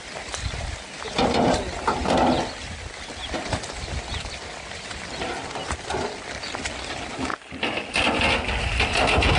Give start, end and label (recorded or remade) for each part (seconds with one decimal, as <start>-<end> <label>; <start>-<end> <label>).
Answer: 0.0-9.4 recorded